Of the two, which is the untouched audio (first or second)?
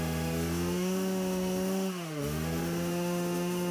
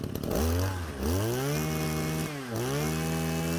second